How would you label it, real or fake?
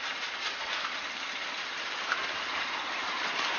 fake